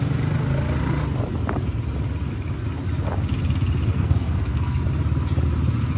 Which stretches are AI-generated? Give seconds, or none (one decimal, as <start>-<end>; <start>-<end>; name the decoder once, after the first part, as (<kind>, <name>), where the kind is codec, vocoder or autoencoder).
3.9-4.8 (codec, SNAC)